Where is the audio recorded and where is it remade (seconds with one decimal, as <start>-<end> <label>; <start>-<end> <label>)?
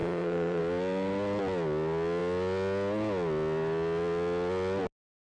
0.0-0.6 remade; 0.6-5.3 recorded